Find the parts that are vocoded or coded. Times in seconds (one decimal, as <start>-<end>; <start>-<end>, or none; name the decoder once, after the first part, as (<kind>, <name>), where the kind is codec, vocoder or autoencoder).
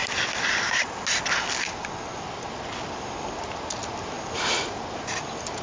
none